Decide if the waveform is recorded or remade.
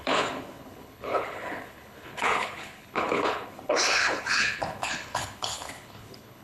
remade